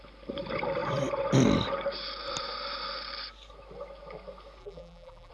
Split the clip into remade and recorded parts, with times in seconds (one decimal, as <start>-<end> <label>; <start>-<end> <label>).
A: 0.0-4.6 recorded; 4.6-5.3 remade